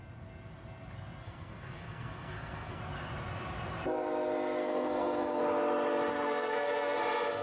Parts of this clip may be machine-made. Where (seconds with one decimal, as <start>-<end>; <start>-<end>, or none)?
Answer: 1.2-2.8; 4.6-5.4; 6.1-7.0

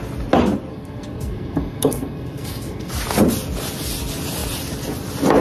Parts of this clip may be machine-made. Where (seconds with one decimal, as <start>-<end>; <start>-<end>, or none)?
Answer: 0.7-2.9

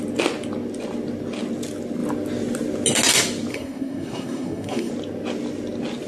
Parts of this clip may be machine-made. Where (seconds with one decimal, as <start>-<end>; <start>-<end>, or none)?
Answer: 3.5-4.9

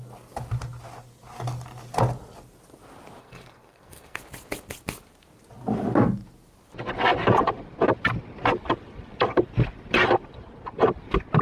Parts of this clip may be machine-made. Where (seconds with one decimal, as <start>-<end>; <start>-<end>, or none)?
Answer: 3.2-4.2